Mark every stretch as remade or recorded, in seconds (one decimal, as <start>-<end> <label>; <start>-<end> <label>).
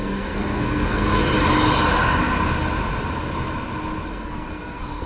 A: 0.0-1.2 remade; 1.2-4.1 recorded; 4.1-5.1 remade